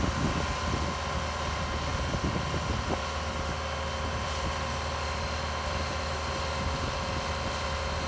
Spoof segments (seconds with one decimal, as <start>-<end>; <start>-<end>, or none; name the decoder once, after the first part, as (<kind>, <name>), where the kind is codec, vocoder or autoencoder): none